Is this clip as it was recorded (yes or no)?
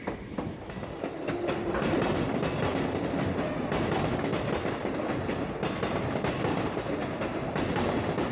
yes